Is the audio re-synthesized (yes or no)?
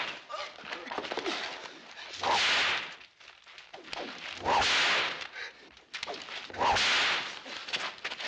no